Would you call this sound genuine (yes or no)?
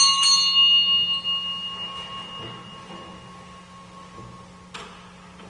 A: yes